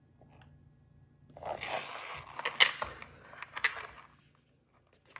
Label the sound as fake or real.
real